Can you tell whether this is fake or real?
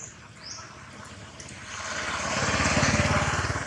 real